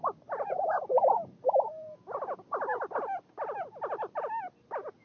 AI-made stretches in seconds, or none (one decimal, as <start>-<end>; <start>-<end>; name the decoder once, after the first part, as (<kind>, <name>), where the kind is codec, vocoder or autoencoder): none